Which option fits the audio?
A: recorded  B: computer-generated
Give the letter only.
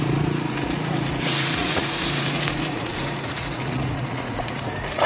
B